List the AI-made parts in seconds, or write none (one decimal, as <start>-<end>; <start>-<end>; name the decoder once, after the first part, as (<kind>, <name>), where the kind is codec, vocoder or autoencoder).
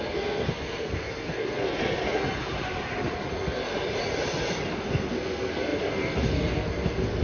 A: 0.0-2.2 (codec, SNAC); 3.3-3.7; 4.7-7.2